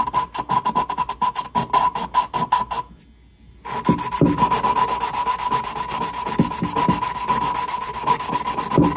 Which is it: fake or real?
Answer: real